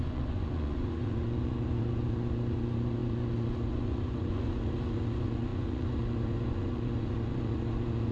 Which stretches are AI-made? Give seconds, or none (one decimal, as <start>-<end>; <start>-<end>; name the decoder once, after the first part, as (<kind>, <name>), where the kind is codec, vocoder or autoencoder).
0.0-8.1 (vocoder, Vocos)